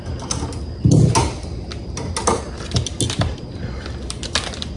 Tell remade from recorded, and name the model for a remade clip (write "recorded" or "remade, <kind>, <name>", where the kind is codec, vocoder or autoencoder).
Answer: recorded